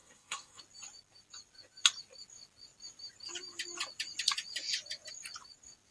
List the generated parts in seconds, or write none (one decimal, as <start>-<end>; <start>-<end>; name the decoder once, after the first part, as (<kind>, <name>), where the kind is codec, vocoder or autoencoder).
0.0-0.6 (codec, SNAC)